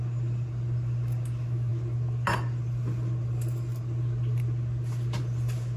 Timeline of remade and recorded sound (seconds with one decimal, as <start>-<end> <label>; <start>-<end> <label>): 0.0-5.8 recorded